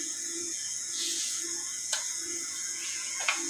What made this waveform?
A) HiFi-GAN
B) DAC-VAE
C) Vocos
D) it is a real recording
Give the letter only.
C